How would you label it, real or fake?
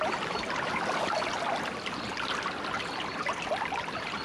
real